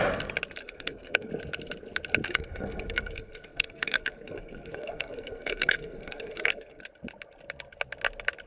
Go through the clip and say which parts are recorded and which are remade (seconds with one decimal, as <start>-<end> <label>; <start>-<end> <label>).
0.0-0.6 recorded; 0.6-1.3 remade; 1.3-2.2 recorded; 2.2-6.8 remade; 6.8-8.5 recorded